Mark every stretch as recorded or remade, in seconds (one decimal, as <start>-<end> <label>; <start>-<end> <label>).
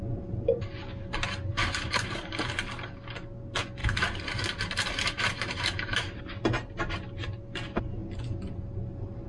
0.0-0.9 recorded; 0.9-2.5 remade; 2.5-3.8 recorded; 3.8-6.2 remade; 6.2-9.3 recorded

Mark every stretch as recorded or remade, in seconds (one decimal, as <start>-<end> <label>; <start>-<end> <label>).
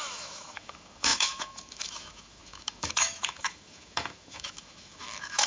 0.0-5.5 remade